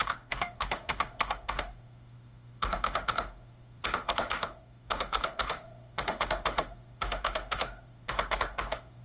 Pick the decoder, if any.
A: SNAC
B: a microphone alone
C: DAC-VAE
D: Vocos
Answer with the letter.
C